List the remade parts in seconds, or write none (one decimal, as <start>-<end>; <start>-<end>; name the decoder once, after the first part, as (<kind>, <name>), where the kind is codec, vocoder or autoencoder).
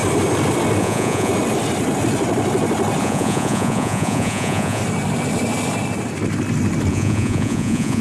0.8-1.3 (vocoder, Vocos); 3.0-4.8; 6.9-8.0